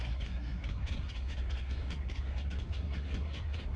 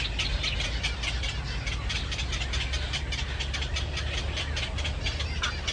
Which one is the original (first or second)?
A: second